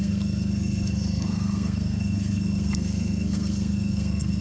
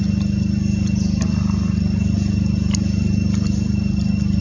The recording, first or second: second